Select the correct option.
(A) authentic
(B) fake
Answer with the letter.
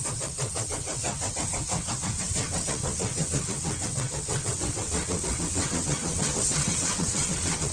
B